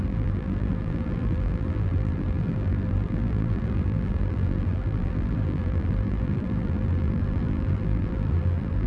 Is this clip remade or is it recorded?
remade